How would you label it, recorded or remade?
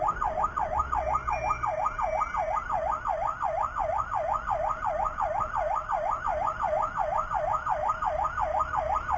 recorded